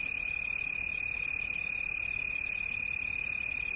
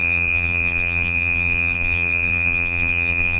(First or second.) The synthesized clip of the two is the second